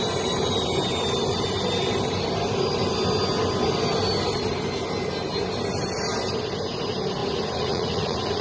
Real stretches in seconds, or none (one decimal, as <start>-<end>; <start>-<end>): 0.0-7.2